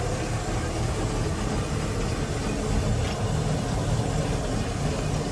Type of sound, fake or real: real